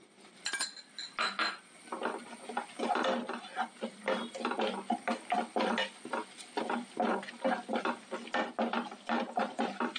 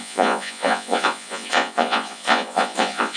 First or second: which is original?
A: first